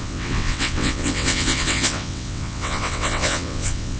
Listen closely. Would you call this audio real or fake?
fake